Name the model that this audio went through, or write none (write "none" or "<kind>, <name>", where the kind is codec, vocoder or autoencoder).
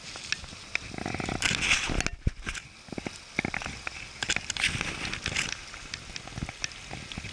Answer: none